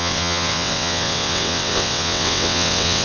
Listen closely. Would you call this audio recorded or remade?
remade